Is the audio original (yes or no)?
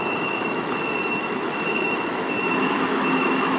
no